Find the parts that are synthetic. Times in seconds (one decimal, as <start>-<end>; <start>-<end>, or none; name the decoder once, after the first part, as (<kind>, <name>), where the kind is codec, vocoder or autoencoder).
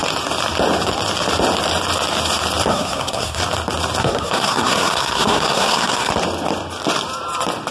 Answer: 2.7-3.4 (codec, SNAC); 4.0-6.1